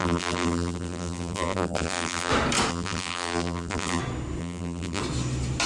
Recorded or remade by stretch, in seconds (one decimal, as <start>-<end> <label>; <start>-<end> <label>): 0.0-2.3 remade; 2.3-2.7 recorded; 2.7-4.0 remade; 4.0-4.4 recorded; 4.4-5.0 remade; 5.0-5.7 recorded